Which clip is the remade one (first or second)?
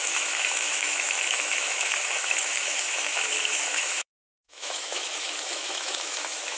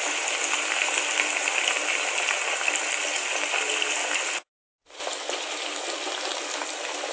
first